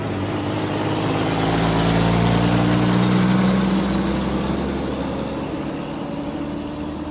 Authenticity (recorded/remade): recorded